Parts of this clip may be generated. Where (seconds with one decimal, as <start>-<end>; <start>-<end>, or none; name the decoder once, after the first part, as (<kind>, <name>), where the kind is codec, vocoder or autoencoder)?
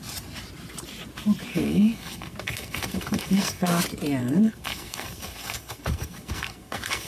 1.5-3.8 (codec, SNAC); 4.2-7.1